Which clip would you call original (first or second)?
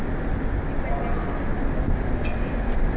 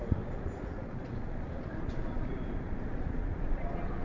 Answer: first